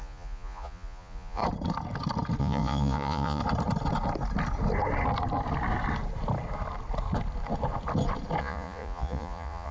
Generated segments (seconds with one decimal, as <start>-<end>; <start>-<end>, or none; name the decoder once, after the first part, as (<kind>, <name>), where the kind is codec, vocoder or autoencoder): 0.0-1.4 (vocoder, Vocos); 2.4-3.4; 8.4-9.7